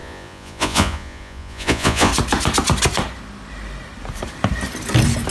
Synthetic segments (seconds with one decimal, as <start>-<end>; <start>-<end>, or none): 0.0-2.1